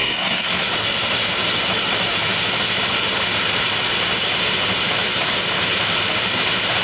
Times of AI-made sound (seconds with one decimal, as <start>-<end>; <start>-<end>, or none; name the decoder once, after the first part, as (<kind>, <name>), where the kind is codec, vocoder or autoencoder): 0.0-0.7 (codec, SNAC)